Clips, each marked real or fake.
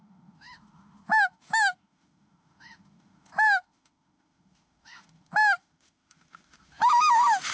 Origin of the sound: fake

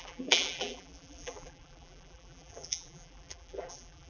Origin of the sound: fake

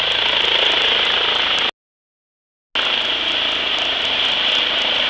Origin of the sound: real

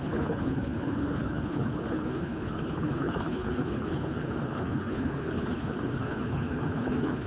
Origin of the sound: fake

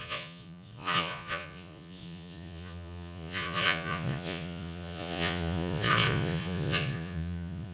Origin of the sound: fake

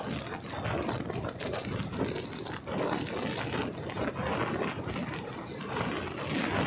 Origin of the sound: real